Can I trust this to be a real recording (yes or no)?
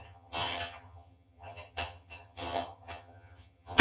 no